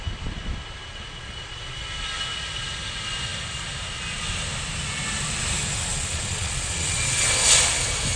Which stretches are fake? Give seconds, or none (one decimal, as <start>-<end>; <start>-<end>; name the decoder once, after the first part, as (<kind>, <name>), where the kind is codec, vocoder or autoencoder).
0.9-1.8 (vocoder, Vocos); 5.9-6.9